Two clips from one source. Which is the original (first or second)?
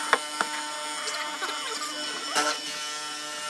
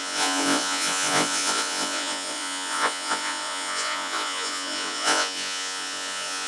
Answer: first